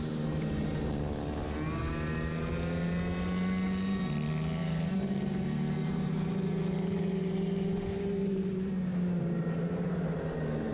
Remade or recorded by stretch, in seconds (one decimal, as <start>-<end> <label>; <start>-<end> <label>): 0.0-4.6 recorded; 4.6-8.7 remade; 8.7-10.7 recorded